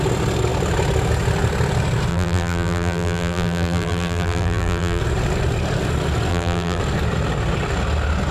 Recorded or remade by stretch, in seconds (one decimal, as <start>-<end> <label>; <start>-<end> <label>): 0.0-2.1 recorded; 2.1-5.0 remade; 5.0-6.3 recorded; 6.3-6.8 remade; 6.8-8.3 recorded